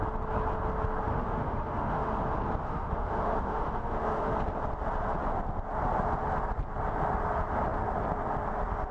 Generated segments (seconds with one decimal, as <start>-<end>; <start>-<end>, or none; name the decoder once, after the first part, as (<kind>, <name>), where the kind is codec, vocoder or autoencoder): 1.1-2.1 (autoencoder, DAC-VAE); 2.6-4.3